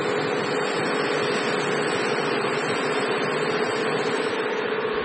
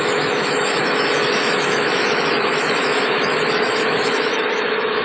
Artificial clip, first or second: second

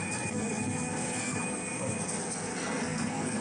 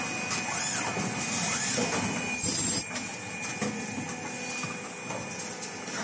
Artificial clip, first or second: first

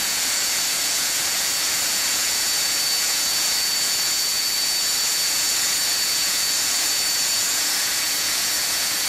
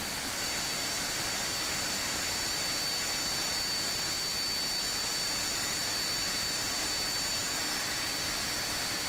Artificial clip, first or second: first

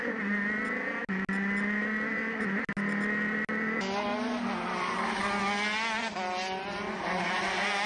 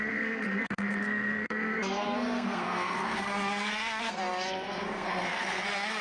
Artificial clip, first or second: second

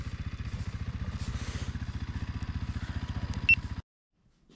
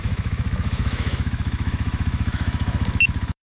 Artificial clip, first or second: second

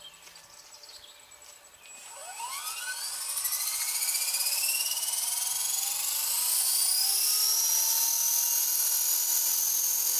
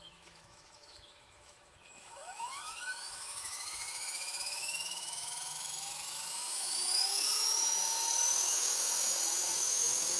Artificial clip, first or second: second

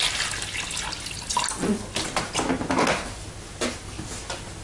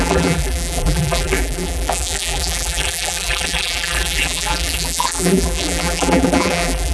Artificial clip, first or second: second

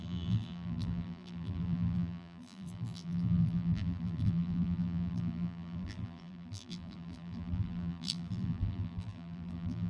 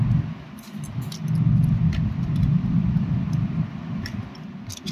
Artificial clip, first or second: first